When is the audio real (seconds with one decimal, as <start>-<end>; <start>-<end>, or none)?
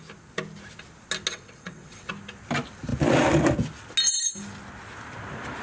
0.0-1.3; 2.1-5.6